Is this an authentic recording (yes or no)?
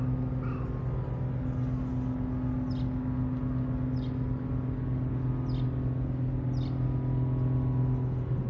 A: yes